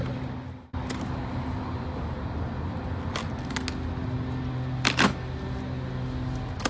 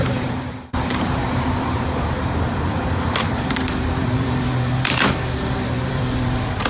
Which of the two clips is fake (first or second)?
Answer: second